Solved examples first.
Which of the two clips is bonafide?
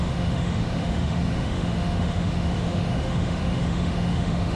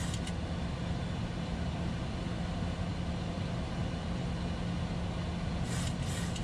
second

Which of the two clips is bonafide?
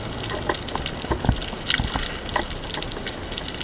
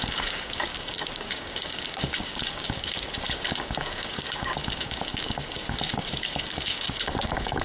first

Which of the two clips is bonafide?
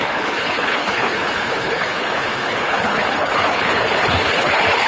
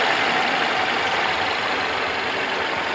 second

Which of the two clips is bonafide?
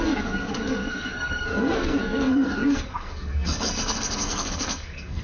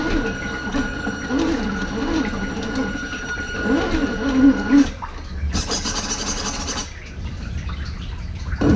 second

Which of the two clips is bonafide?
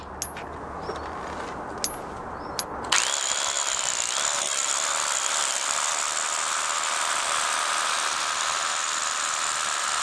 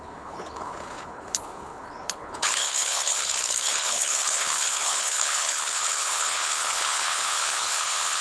first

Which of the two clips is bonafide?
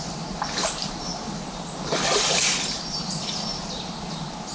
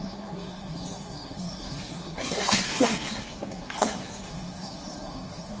first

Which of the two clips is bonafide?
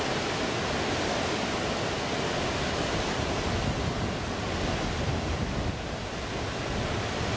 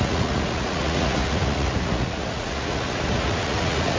first